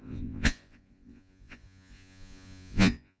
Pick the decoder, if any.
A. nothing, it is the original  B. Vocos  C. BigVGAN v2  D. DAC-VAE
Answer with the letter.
B